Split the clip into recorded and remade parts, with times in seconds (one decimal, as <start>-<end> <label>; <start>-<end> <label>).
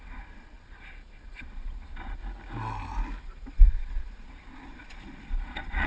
0.0-2.2 remade; 2.2-3.2 recorded; 3.2-5.9 remade